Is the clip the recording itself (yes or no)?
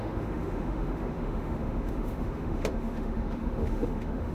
no